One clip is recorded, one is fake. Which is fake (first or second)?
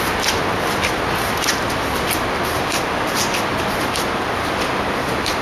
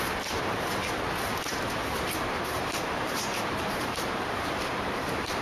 second